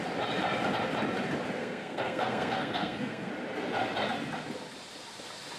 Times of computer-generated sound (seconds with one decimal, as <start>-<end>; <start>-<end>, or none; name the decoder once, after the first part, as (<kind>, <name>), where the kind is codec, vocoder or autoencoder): 1.6-3.3 (codec, SNAC)